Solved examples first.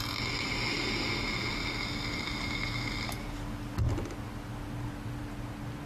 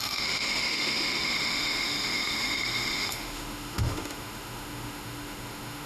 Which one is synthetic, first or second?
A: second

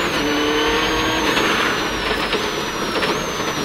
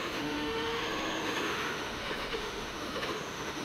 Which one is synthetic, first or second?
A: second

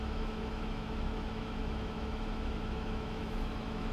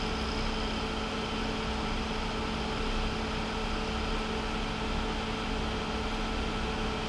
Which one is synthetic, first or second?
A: first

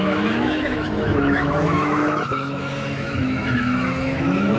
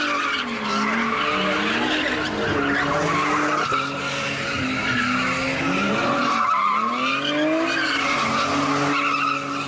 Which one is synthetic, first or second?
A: first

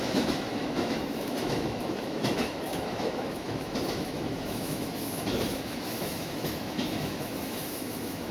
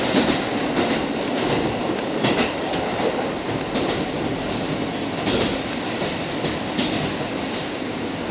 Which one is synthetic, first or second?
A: first